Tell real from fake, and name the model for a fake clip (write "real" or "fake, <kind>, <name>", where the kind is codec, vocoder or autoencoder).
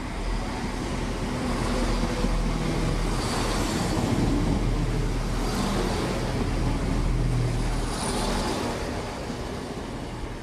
real